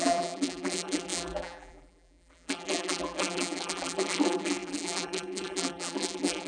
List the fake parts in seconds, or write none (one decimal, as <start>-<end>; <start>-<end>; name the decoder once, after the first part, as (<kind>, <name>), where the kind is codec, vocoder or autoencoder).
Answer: 0.0-6.5 (vocoder, BigVGAN v2)